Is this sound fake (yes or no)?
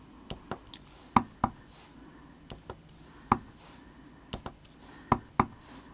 no